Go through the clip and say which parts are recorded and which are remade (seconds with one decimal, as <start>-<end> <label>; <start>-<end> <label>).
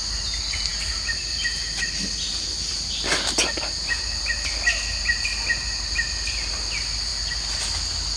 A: 0.0-8.2 recorded